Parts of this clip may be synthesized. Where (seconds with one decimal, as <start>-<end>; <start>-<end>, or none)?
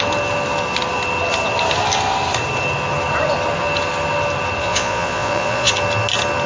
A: 4.6-5.7